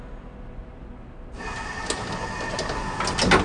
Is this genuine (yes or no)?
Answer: yes